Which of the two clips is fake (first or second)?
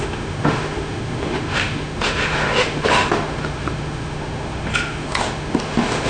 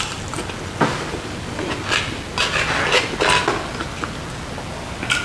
first